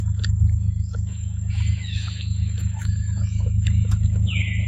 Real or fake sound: fake